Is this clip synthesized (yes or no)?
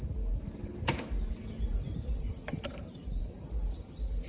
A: yes